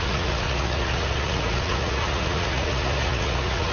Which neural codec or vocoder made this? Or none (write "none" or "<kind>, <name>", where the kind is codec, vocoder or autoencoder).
vocoder, Vocos